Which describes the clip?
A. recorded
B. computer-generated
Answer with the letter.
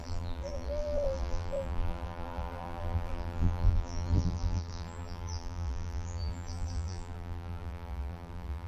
B